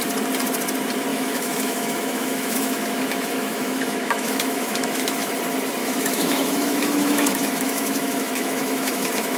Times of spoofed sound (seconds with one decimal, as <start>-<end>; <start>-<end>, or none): 1.1-5.3; 5.8-9.4